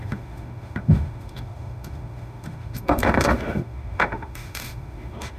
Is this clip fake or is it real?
fake